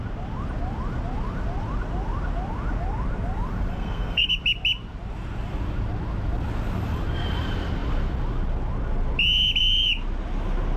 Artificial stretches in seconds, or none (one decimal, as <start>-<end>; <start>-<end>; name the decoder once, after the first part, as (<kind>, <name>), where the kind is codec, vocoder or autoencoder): 3.7-4.3 (codec, SNAC)